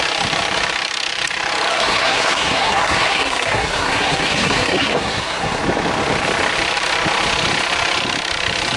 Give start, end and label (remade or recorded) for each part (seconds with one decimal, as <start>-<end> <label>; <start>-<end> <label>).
0.0-1.7 recorded; 1.7-5.6 remade; 5.6-8.8 recorded